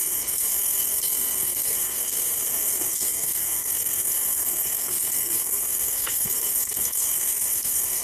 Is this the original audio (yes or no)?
no